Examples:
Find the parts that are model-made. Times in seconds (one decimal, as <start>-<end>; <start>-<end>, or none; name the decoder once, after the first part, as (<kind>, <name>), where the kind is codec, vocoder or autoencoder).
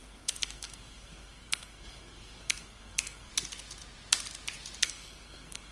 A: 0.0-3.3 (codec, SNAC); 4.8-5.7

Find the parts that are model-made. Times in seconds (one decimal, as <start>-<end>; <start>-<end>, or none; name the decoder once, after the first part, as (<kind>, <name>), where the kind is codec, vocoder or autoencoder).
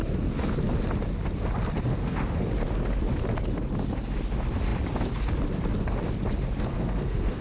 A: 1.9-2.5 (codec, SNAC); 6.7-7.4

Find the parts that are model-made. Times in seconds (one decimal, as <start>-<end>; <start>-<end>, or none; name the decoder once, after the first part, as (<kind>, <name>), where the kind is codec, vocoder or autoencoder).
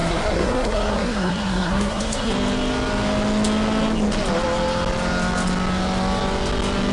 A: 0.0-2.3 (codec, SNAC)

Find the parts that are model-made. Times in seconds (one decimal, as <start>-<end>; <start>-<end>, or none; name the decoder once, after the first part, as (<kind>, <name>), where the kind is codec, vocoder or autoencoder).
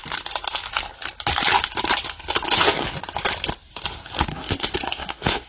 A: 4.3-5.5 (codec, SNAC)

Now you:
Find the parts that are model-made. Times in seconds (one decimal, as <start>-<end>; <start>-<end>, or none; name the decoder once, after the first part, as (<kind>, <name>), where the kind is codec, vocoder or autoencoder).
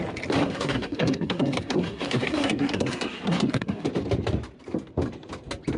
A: 0.4-3.9 (codec, SNAC)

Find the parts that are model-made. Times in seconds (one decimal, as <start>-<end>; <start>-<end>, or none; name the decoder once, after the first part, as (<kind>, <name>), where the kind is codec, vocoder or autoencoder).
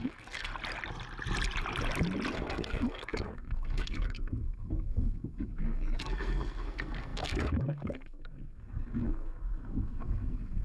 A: 0.0-0.5 (codec, SNAC); 2.3-10.6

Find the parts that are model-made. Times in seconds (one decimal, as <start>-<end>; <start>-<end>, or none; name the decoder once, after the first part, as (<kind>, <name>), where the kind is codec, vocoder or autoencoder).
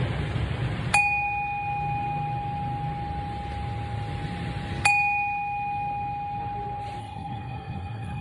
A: 7.0-8.2 (codec, SNAC)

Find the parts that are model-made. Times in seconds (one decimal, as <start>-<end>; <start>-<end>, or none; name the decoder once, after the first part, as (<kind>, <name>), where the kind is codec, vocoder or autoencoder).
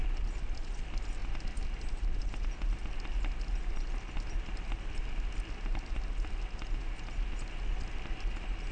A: none